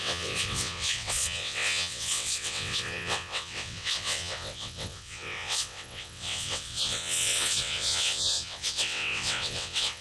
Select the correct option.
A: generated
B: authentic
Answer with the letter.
A